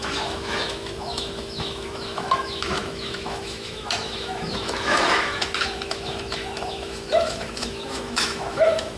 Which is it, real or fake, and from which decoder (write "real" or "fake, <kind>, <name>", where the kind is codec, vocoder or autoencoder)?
fake, autoencoder, DAC-VAE